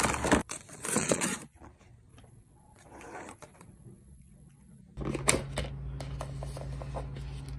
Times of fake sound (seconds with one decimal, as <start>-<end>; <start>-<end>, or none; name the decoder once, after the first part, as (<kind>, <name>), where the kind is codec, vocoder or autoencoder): 0.4-1.6 (vocoder, Vocos); 2.1-4.8